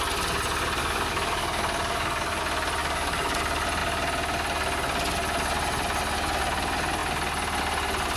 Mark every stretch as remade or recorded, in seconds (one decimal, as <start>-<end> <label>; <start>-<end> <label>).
0.0-0.8 recorded; 0.8-2.4 remade; 2.4-2.8 recorded; 2.8-3.4 remade; 3.4-8.2 recorded